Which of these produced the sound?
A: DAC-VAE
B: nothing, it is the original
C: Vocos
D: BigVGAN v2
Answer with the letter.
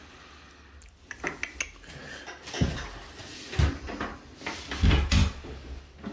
B